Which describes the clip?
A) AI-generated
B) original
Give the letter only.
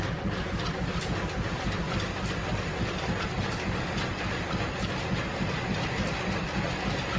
B